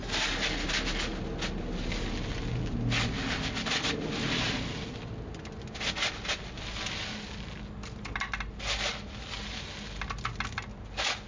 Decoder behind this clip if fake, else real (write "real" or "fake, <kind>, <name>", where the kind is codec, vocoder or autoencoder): real